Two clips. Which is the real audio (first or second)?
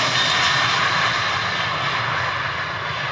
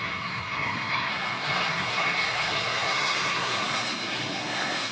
first